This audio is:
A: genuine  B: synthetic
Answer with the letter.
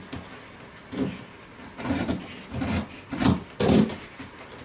B